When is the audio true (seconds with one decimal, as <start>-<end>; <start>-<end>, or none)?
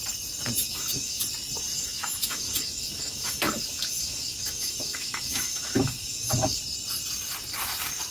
0.0-0.6; 1.2-1.7; 6.6-8.1